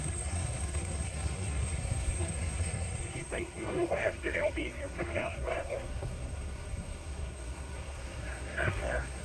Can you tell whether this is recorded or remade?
remade